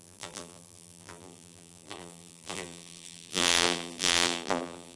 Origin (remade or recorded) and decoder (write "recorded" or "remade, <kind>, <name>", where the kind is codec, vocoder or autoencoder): remade, vocoder, BigVGAN v2